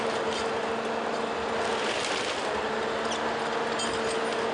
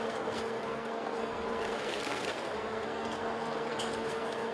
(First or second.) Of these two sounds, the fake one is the second